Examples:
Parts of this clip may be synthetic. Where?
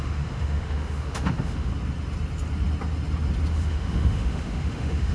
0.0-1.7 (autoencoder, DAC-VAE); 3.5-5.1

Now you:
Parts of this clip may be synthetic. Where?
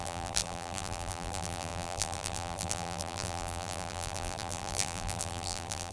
0.0-5.9 (vocoder, BigVGAN v2)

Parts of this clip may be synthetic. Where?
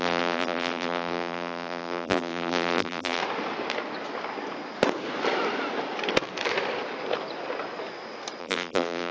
0.0-3.2 (vocoder, BigVGAN v2); 8.4-9.1